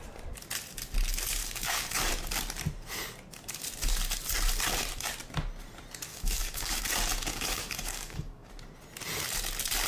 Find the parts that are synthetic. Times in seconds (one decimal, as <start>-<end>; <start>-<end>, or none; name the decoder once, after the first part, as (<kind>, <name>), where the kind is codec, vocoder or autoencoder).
1.4-2.1 (codec, DAC); 6.1-6.8; 7.3-8.5